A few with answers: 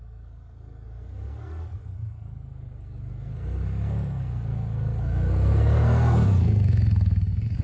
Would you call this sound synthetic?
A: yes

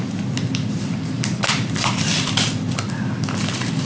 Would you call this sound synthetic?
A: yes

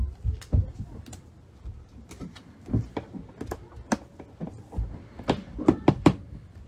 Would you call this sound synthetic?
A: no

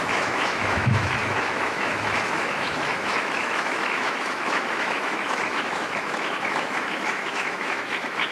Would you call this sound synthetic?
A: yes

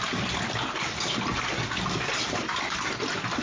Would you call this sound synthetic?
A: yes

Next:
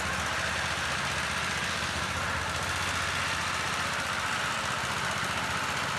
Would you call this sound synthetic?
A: no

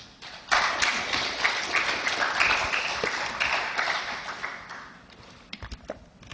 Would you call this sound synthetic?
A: no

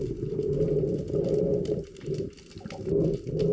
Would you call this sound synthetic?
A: no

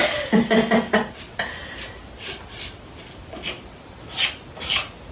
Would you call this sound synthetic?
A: no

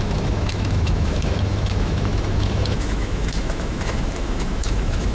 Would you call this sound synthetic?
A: yes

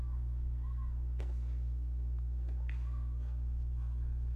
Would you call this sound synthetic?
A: yes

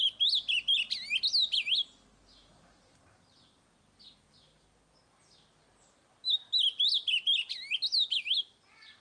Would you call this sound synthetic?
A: no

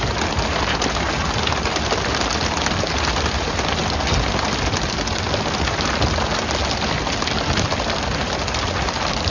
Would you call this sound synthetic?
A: no